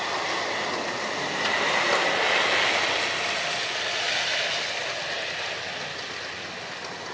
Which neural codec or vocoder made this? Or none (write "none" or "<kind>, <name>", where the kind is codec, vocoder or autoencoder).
none